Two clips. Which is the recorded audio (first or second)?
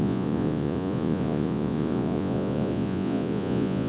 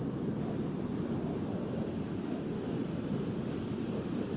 second